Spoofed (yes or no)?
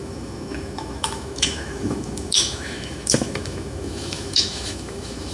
yes